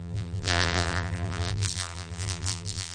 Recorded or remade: remade